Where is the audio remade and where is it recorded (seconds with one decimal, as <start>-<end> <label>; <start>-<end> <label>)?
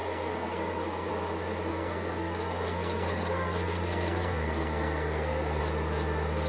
0.0-1.1 remade; 1.1-1.7 recorded; 1.7-5.6 remade; 5.6-6.5 recorded